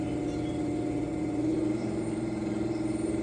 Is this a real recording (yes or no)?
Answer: no